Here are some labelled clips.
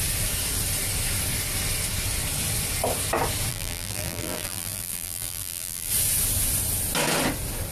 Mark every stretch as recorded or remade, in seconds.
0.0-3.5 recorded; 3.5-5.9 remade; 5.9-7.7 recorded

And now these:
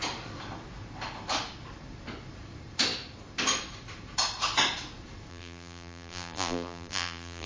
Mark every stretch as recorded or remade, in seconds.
0.0-5.3 recorded; 5.3-7.5 remade

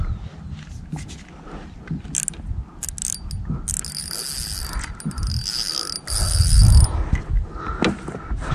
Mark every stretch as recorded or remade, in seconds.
0.0-8.5 recorded

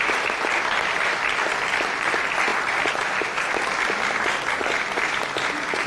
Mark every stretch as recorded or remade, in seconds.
0.0-5.9 recorded

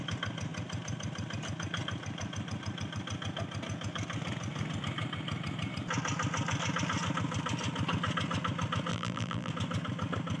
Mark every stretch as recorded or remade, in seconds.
0.0-8.9 recorded; 8.9-9.5 remade; 9.5-10.4 recorded

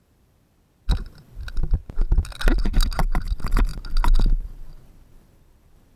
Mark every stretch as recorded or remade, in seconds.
0.0-1.8 remade; 1.8-3.3 recorded; 3.3-3.7 remade; 3.7-4.2 recorded; 4.2-6.0 remade

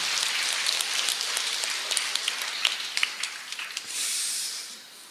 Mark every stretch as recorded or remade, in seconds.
0.0-5.1 remade

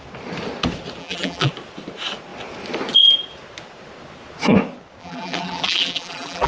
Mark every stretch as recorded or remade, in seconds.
0.0-1.0 recorded; 1.0-1.5 remade; 1.5-5.0 recorded; 5.0-6.5 remade